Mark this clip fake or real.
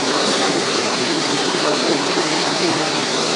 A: fake